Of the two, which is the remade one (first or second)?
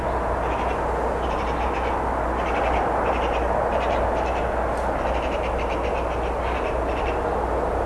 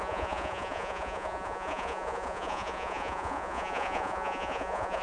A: second